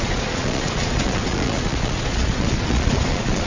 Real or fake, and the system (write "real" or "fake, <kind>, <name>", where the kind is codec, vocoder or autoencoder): fake, vocoder, Vocos